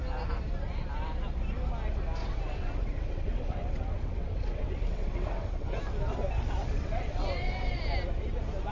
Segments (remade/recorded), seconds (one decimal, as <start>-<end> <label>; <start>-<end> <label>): 0.0-2.2 recorded; 2.2-5.8 remade; 5.8-6.6 recorded; 6.6-7.8 remade; 7.8-8.7 recorded